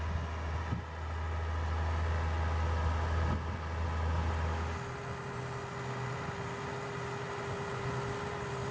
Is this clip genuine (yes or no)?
yes